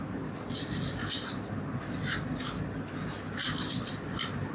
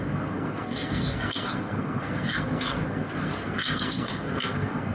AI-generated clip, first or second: second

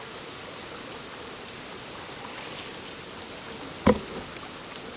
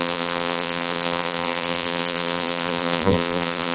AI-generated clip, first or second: second